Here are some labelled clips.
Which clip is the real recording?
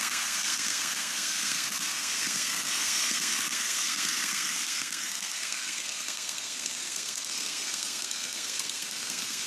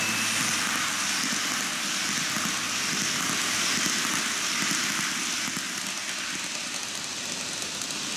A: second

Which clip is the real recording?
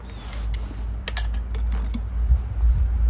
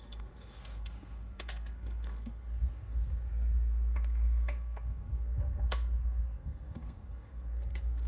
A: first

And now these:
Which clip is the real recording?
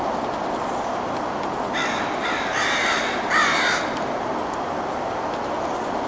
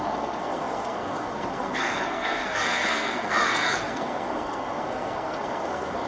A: first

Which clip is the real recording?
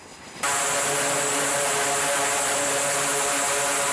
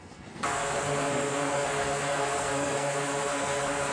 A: first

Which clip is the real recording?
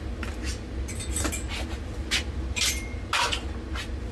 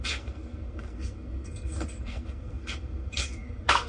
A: first